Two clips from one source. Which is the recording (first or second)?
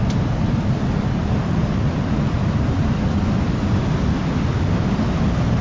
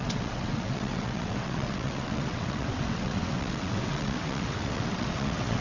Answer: first